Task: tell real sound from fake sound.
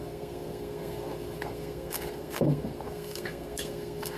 fake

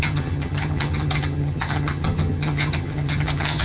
fake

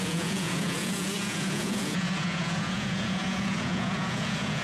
fake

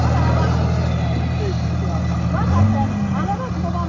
real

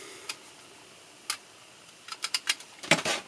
real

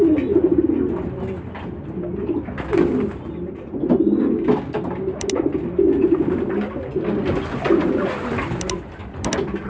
real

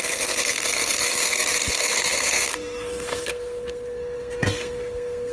fake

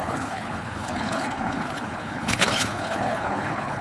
fake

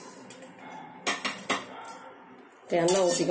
real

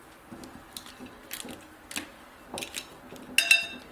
real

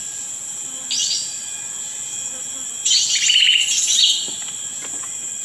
real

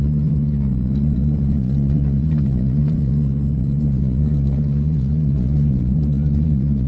fake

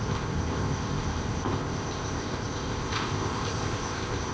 fake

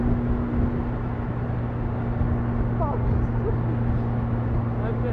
real